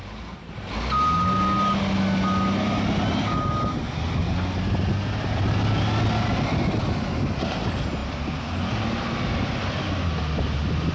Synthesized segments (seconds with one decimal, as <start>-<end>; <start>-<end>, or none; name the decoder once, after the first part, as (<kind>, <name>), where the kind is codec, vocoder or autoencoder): none